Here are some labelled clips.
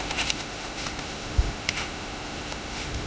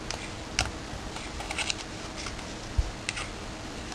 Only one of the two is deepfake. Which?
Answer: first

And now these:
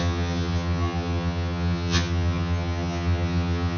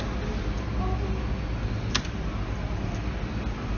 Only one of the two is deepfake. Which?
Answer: first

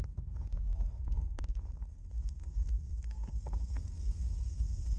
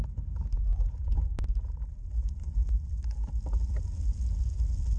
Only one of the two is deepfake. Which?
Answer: first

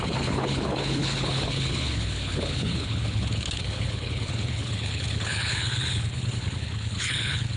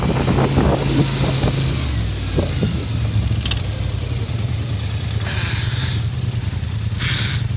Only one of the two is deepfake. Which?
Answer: first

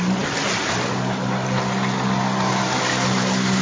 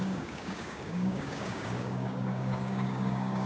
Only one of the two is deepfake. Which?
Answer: second